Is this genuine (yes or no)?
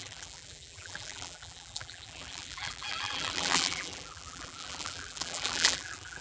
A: no